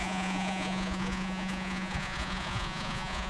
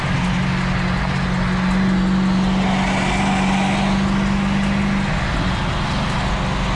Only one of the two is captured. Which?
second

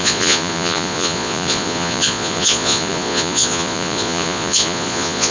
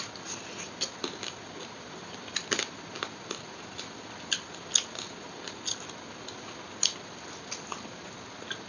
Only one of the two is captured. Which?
second